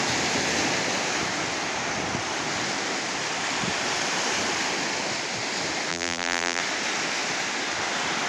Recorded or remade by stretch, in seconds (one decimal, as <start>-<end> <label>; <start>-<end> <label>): 0.0-5.9 recorded; 5.9-6.6 remade; 6.6-8.3 recorded